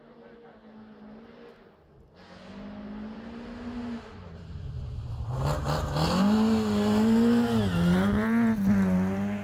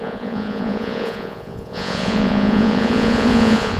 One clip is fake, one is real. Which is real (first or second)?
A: first